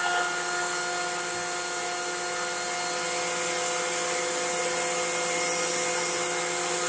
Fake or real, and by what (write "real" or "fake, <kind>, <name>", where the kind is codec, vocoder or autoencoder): real